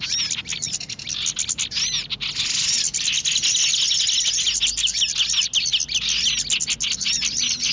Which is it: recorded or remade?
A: recorded